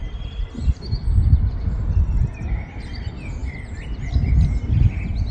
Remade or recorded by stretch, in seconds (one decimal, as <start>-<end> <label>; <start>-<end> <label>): 0.0-5.3 recorded